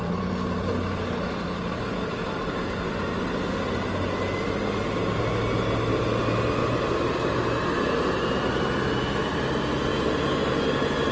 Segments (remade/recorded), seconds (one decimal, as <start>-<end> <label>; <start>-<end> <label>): 0.0-11.1 recorded